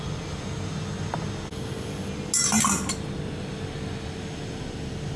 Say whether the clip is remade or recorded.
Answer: recorded